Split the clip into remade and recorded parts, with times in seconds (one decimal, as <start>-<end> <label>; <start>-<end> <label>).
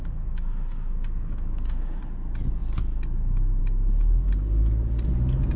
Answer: 0.0-2.0 remade; 2.0-5.6 recorded